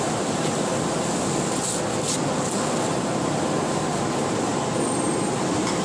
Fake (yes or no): no